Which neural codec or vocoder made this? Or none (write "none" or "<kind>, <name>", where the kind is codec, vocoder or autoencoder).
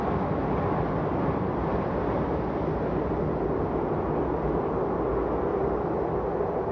none